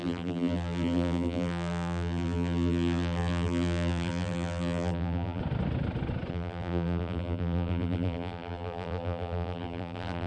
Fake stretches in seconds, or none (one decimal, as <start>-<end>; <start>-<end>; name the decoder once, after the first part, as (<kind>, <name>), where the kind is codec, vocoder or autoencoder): 0.0-5.4 (vocoder, BigVGAN v2); 6.3-10.3